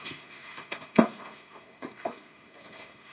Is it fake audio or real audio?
fake